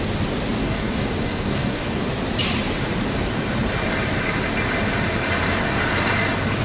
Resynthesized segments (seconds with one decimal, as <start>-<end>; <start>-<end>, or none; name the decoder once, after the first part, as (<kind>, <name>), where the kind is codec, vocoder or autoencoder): 0.6-2.0 (codec, DAC)